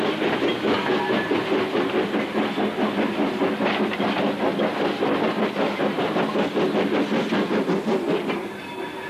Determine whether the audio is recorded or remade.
recorded